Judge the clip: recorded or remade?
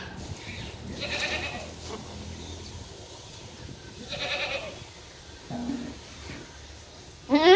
recorded